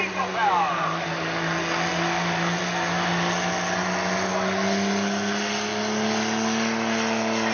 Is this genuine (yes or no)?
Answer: yes